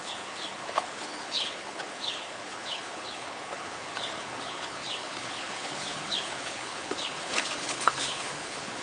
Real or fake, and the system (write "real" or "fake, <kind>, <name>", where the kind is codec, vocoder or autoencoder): fake, codec, HILCodec